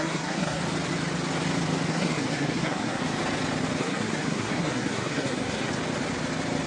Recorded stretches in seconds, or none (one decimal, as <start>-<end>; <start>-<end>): 0.6-1.9; 3.0-3.8; 5.7-6.7